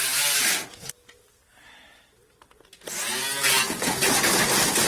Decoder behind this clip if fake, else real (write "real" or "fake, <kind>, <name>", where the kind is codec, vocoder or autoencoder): real